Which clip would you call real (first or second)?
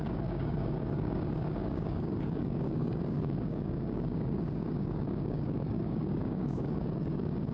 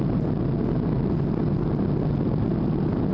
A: second